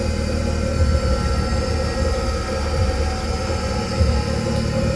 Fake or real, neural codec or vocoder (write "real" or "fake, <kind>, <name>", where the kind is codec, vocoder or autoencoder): real